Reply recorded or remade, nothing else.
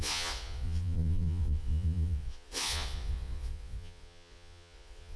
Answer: remade